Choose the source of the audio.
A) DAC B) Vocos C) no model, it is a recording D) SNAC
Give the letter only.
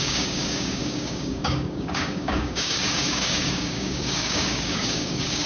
A